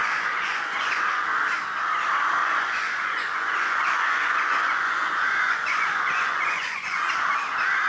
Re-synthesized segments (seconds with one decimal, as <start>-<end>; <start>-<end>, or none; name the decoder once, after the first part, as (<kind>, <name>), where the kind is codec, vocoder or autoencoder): 0.0-1.4 (vocoder, Vocos); 2.4-7.1